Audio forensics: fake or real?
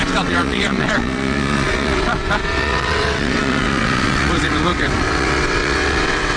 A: fake